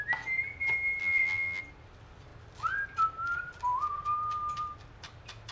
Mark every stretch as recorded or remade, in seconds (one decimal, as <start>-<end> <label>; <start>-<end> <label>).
0.0-1.0 recorded; 1.0-1.6 remade; 1.6-5.5 recorded